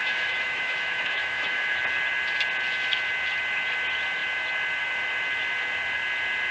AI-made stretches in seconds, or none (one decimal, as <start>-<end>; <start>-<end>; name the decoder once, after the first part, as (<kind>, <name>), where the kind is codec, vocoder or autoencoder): 0.0-1.8 (autoencoder, DAC-VAE)